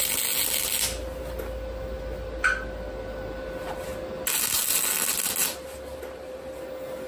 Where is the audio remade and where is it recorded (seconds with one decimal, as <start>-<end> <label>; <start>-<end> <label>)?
0.0-5.4 recorded; 5.4-6.6 remade; 6.6-7.1 recorded